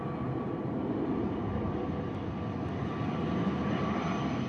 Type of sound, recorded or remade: recorded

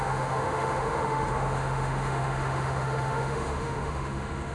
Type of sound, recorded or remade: remade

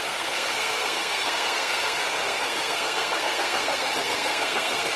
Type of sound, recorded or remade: remade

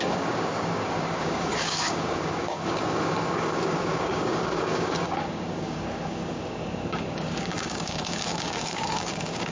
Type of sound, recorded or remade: remade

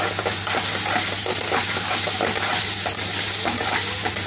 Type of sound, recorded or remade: recorded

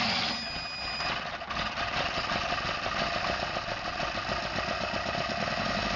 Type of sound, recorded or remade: recorded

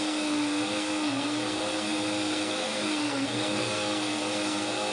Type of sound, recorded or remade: remade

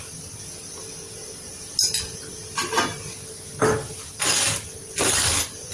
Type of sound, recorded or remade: recorded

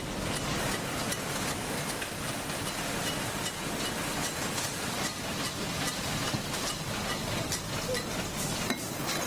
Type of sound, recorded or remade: recorded